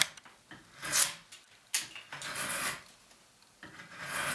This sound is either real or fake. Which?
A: real